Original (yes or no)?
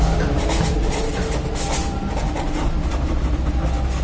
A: yes